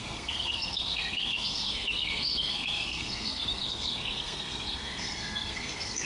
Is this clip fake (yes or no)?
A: yes